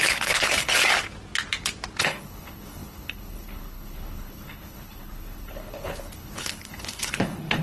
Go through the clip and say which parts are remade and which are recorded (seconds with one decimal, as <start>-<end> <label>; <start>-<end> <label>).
0.0-0.8 remade; 0.8-2.0 recorded; 2.0-7.6 remade